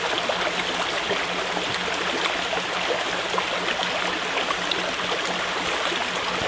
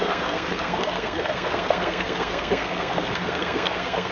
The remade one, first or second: second